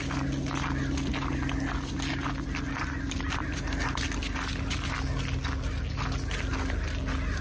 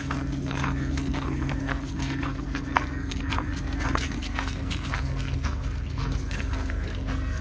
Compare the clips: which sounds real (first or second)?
first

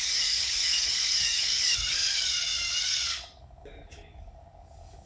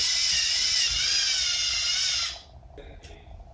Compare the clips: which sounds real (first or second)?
second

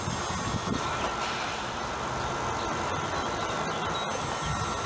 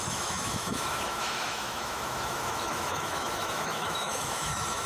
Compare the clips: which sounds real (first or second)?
first